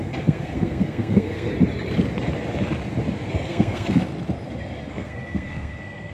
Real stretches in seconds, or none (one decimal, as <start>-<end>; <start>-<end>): 1.5-3.3; 4.1-4.9